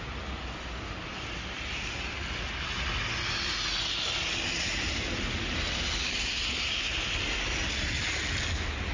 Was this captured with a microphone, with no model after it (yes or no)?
yes